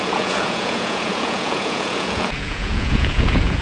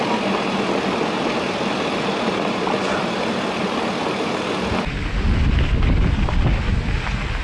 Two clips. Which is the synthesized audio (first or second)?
first